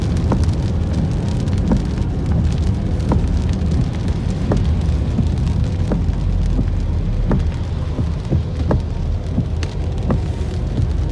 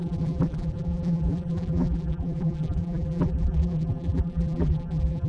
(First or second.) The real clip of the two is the first